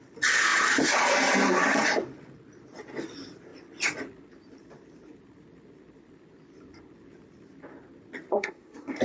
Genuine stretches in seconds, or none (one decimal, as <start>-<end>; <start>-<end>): 0.0-8.3